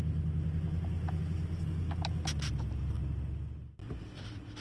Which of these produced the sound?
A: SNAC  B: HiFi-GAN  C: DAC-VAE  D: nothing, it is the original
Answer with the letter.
D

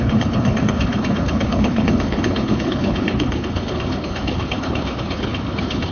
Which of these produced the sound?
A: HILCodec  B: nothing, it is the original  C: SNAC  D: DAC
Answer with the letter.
A